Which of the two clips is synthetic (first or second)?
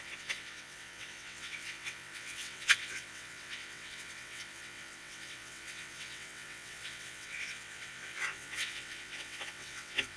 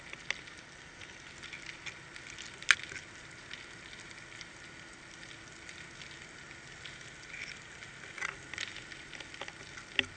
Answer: first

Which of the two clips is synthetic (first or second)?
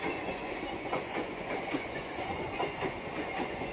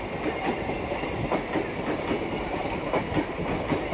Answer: first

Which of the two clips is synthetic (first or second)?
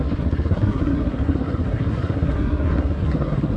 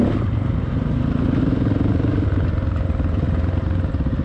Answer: first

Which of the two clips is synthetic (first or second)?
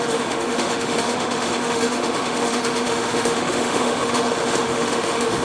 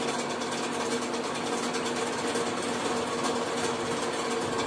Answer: first